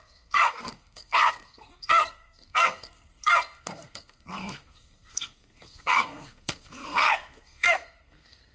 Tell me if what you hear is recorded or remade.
remade